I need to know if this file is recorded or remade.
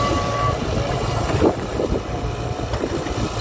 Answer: remade